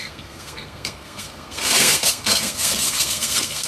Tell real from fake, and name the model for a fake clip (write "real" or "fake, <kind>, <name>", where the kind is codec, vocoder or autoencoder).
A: fake, codec, SNAC